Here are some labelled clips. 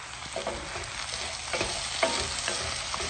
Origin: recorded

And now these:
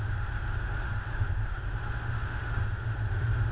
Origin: remade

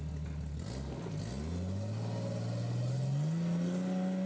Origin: recorded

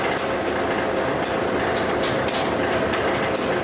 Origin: recorded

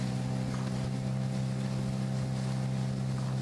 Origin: recorded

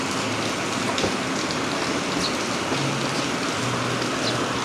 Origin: recorded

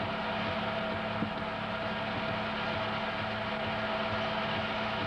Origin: recorded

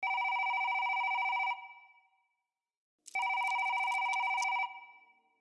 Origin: recorded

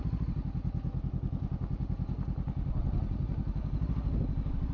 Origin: recorded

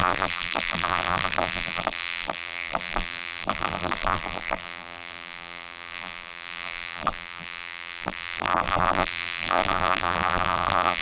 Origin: remade